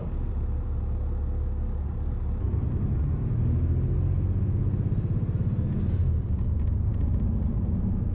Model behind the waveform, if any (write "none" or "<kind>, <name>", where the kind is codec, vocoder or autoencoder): none